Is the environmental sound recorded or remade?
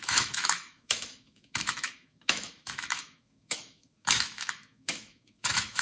remade